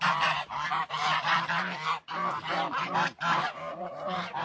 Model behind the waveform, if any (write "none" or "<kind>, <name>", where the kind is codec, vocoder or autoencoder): vocoder, BigVGAN v2